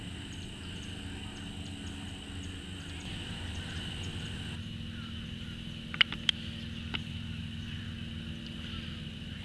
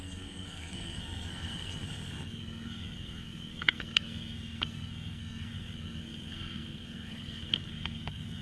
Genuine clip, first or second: first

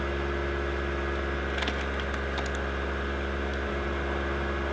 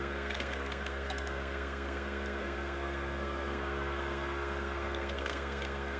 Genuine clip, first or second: first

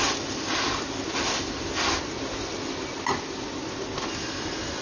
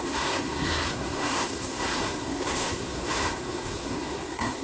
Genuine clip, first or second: first